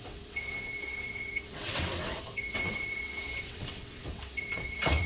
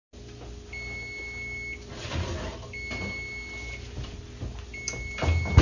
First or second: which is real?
second